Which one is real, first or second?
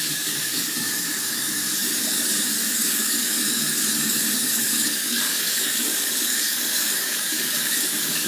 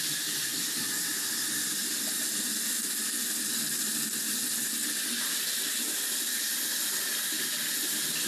second